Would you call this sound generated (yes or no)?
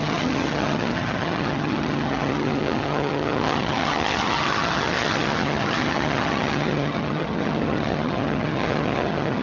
yes